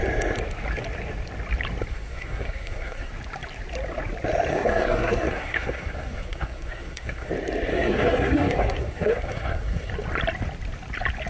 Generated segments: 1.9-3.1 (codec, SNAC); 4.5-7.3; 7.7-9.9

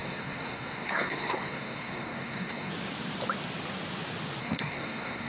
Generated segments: 0.0-2.7 (codec, SNAC); 4.4-5.3